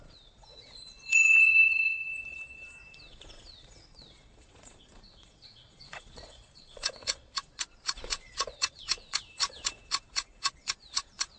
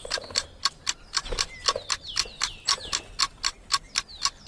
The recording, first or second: second